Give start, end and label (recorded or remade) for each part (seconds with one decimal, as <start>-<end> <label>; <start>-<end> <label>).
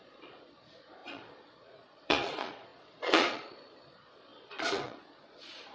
0.0-5.7 remade